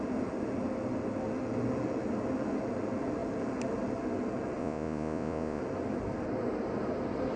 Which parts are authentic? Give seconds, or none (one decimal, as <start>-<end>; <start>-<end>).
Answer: 0.0-4.6; 5.6-7.4